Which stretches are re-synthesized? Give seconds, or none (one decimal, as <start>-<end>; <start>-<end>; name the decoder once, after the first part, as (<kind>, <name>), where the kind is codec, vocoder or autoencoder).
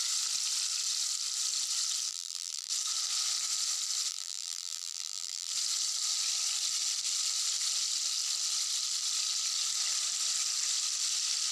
2.1-2.7 (vocoder, BigVGAN v2); 4.1-5.5